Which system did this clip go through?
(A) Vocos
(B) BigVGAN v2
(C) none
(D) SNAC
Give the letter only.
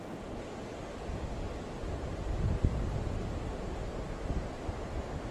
C